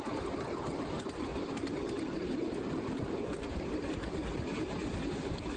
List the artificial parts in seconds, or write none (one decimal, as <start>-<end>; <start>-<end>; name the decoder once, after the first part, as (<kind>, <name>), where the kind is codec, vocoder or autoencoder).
none